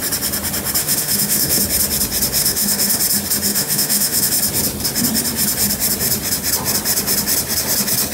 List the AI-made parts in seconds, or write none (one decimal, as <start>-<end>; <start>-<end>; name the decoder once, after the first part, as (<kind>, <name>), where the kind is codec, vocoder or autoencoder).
0.8-1.6 (autoencoder, DAC-VAE); 2.4-3.0; 3.5-4.3